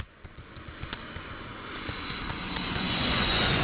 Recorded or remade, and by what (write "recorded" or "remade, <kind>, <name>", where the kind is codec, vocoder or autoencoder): remade, vocoder, Vocos